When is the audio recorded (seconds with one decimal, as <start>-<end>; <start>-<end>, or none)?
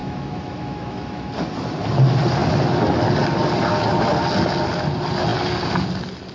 1.3-6.3